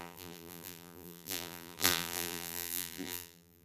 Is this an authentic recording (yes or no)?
no